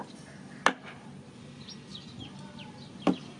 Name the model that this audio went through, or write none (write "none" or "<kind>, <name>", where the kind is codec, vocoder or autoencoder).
none